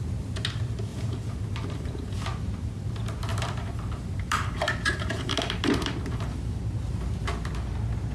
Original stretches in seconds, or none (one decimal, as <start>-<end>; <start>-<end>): 0.0-0.9; 2.1-3.3; 6.6-8.1